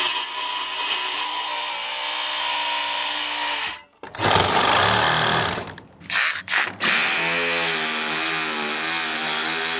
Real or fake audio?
real